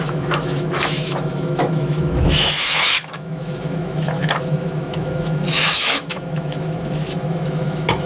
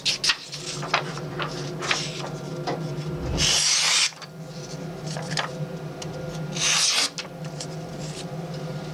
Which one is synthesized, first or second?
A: first